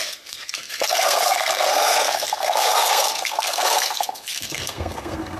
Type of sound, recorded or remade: remade